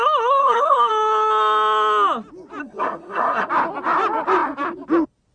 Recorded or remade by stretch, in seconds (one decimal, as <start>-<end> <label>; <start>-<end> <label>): 0.0-0.4 recorded; 0.4-0.9 remade; 0.9-2.6 recorded; 2.6-3.5 remade; 3.5-5.3 recorded